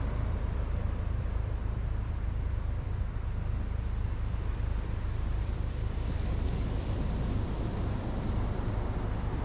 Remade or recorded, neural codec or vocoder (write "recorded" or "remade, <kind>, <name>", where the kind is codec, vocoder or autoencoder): remade, vocoder, BigVGAN v2